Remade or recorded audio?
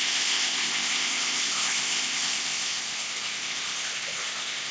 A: remade